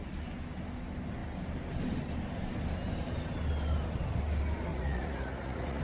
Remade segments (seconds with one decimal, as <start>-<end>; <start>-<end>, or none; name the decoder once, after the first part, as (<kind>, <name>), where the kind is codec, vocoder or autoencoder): 4.7-5.8 (vocoder, Vocos)